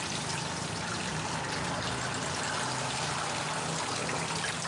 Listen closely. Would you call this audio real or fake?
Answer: real